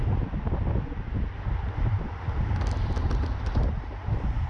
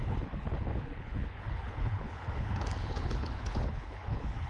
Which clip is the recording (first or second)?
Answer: first